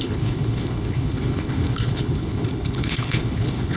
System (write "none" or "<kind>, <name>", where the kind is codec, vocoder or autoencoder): codec, HILCodec